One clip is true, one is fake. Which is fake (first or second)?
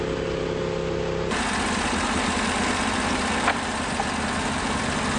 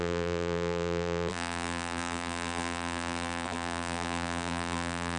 second